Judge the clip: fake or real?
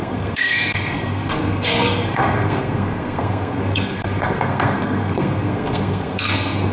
fake